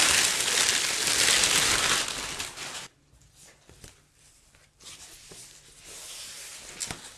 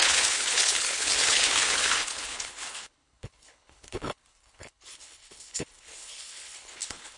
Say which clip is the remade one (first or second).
second